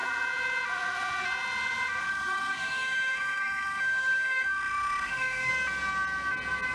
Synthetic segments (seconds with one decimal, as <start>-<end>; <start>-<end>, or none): 2.0-5.5